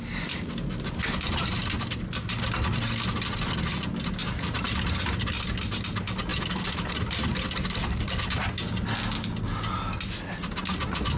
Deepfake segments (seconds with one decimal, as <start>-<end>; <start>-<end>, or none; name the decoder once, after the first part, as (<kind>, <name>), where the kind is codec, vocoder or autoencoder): none